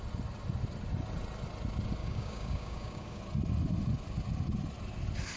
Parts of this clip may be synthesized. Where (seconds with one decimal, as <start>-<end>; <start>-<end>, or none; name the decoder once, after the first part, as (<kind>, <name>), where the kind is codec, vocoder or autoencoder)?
2.0-3.2 (codec, DAC)